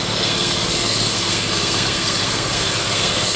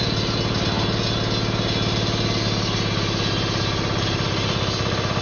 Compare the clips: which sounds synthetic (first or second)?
first